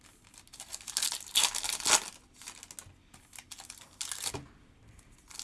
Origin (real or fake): real